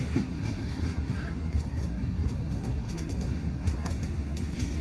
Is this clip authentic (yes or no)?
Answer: no